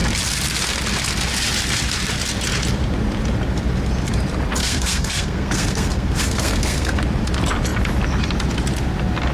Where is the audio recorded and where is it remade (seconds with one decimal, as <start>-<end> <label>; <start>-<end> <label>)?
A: 0.0-4.6 recorded; 4.6-7.0 remade; 7.0-9.3 recorded